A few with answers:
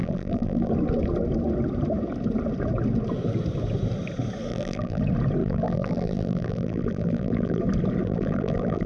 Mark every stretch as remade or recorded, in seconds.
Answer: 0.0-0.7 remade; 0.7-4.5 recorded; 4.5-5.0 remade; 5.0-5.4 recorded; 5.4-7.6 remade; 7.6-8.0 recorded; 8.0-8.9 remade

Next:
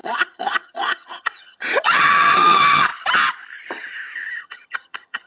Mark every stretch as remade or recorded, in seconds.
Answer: 0.0-2.9 remade; 2.9-4.4 recorded; 4.4-5.3 remade

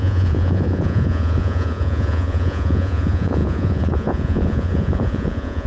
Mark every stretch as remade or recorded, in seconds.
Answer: 0.0-5.7 remade

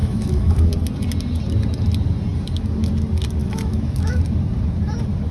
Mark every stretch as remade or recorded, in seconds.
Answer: 0.0-0.7 remade; 0.7-3.4 recorded; 3.4-4.2 remade; 4.2-5.3 recorded

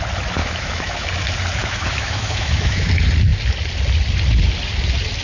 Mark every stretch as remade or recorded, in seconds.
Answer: 0.0-0.4 recorded; 0.4-1.1 remade; 1.1-1.6 recorded; 1.6-2.9 remade; 2.9-5.2 recorded

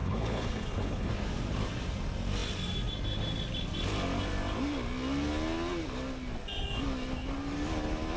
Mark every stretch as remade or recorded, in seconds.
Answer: 0.0-1.1 remade; 1.1-8.2 recorded

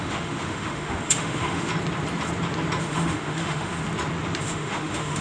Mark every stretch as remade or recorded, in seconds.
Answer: 0.0-1.7 remade; 1.7-2.8 recorded; 2.8-3.8 remade; 3.8-4.4 recorded; 4.4-5.2 remade

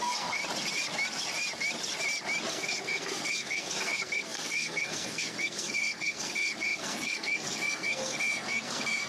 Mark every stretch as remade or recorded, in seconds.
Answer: 0.0-0.4 remade; 0.4-2.5 recorded; 2.5-9.1 remade